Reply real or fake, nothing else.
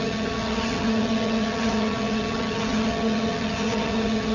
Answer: fake